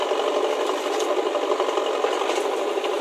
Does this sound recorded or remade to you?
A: recorded